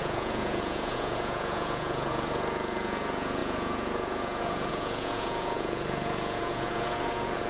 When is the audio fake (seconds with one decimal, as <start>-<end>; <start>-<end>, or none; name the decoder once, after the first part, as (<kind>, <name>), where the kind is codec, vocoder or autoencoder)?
0.0-7.5 (vocoder, Vocos)